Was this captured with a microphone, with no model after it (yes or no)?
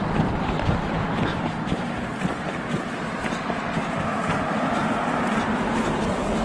yes